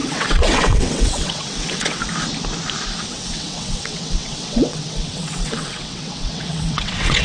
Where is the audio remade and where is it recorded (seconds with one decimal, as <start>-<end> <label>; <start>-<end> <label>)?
0.0-2.0 remade; 2.0-3.1 recorded; 3.1-7.2 remade